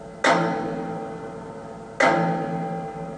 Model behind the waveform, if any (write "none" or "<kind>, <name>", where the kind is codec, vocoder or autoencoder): none